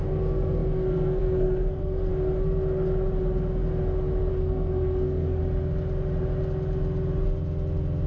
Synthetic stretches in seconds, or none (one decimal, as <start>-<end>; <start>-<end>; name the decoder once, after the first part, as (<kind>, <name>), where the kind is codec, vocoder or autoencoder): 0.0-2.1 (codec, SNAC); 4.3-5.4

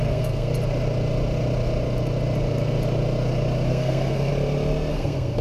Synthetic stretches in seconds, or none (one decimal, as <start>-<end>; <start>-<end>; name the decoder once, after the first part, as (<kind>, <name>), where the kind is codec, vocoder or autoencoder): 0.0-0.5 (codec, SNAC); 3.7-4.3; 4.9-5.4

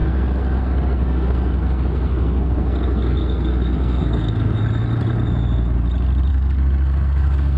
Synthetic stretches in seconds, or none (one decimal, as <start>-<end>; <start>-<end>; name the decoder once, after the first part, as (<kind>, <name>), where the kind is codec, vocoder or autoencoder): 0.0-4.6 (codec, SNAC); 6.3-7.6